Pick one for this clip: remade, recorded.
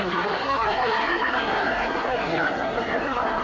remade